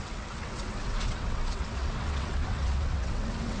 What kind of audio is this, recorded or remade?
remade